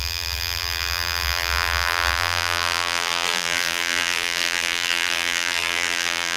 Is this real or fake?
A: fake